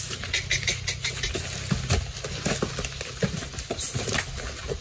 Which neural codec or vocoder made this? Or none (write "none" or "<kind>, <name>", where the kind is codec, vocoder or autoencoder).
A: none